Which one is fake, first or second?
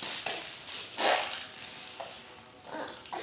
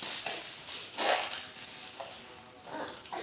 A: first